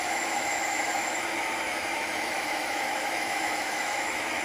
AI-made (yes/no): yes